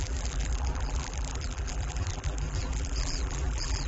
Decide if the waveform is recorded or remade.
remade